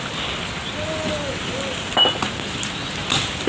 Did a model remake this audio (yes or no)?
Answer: no